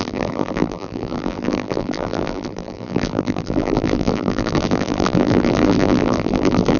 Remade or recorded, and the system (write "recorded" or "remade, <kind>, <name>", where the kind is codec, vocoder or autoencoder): remade, vocoder, BigVGAN v2